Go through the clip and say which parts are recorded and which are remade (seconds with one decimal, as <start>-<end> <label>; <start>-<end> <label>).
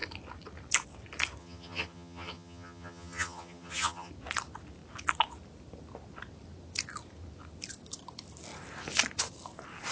0.0-1.4 recorded; 1.4-4.1 remade; 4.1-9.9 recorded